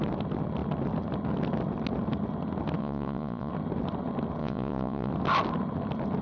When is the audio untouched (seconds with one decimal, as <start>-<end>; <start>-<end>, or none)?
0.0-2.8; 3.5-4.4; 5.1-6.2